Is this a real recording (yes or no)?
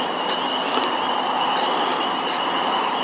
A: yes